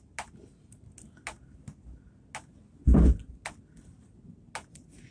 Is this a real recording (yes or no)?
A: yes